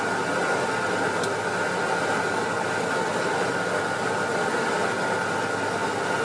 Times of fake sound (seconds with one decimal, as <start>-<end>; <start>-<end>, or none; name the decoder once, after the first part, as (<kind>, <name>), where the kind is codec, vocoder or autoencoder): none